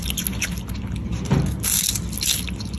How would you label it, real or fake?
real